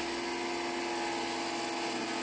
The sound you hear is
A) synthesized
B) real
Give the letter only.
B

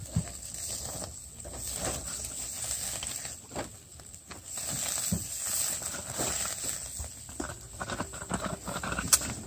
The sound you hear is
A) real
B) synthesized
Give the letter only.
A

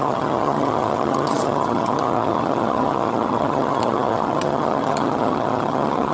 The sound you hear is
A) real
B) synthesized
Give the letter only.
B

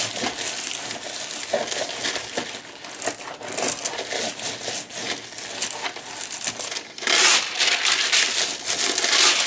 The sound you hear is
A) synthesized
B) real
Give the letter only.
B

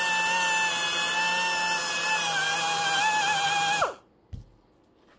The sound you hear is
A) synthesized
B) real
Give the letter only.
B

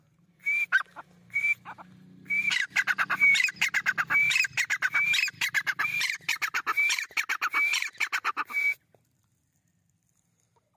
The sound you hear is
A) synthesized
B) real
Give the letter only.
B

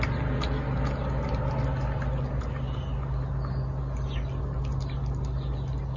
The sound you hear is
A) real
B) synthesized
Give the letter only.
A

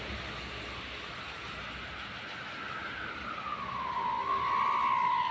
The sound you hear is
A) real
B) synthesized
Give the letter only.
A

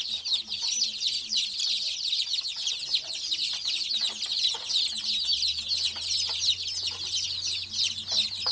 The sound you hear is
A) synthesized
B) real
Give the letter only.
B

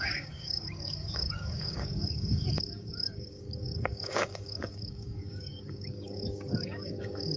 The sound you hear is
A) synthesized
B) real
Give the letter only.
A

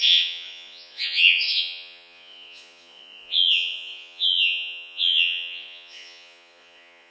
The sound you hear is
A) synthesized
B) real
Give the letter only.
A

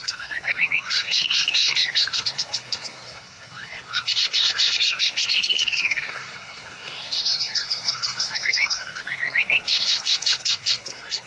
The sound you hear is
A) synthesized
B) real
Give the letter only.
A